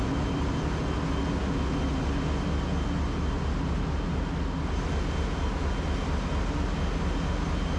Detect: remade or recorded recorded